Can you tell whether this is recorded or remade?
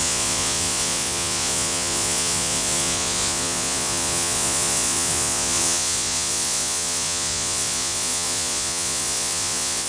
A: remade